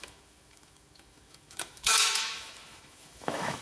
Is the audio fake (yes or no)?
yes